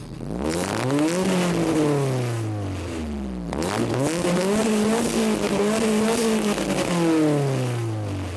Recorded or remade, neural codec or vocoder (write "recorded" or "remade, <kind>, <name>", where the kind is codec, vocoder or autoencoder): recorded